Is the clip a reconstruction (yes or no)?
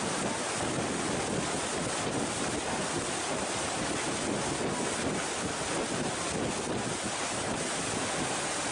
no